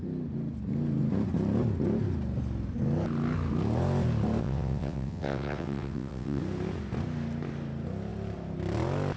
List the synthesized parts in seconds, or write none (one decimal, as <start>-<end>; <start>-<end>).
4.4-6.4